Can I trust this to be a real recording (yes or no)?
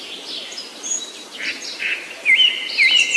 no